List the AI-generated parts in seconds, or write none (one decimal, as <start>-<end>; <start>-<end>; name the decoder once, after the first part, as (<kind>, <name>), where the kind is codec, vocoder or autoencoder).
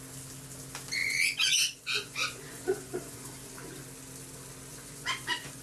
1.0-3.5 (vocoder, Vocos); 4.7-5.6